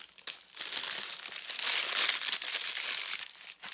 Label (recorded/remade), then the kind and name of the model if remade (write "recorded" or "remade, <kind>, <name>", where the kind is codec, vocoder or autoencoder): recorded